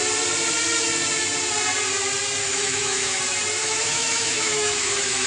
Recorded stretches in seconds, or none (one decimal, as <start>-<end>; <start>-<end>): 0.0-2.4; 3.2-3.6